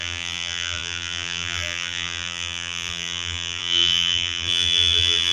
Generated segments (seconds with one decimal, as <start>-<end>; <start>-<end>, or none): 0.0-5.3